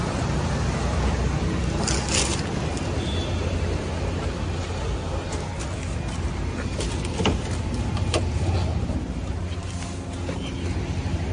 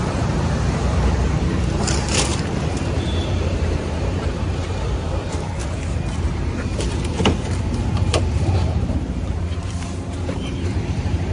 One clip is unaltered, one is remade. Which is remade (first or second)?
second